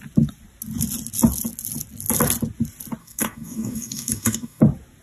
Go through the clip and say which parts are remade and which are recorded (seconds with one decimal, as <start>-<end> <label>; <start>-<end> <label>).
0.0-3.0 recorded; 3.0-4.6 remade; 4.6-5.0 recorded